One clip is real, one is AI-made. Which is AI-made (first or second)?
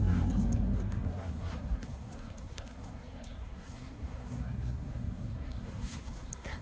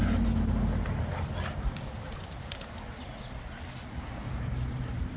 first